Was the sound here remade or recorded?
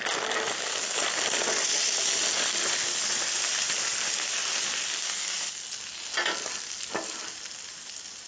recorded